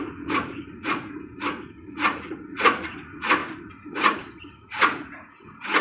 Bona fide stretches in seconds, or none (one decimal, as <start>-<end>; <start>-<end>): none